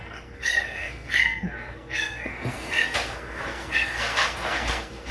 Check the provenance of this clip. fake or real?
fake